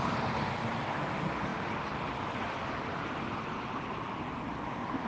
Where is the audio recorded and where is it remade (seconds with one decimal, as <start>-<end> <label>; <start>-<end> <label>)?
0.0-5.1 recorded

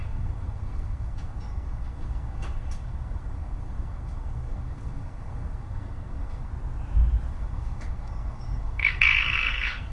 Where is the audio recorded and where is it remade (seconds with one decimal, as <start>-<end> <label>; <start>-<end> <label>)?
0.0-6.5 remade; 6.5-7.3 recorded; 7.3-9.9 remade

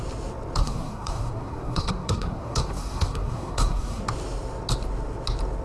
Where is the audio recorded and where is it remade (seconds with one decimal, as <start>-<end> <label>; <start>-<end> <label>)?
0.0-0.6 recorded; 0.6-4.0 remade; 4.0-5.6 recorded

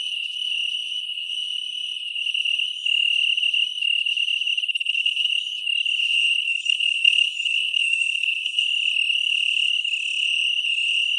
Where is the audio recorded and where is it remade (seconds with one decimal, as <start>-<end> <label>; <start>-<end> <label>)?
0.0-4.7 recorded; 4.7-5.3 remade; 5.3-6.4 recorded; 6.4-8.6 remade; 8.6-11.2 recorded

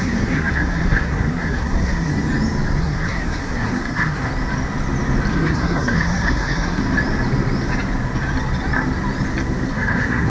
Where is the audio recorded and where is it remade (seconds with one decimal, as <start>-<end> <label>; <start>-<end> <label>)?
0.0-2.1 remade; 2.1-2.8 recorded; 2.8-4.3 remade; 4.3-5.3 recorded; 5.3-6.8 remade; 6.8-9.7 recorded; 9.7-10.3 remade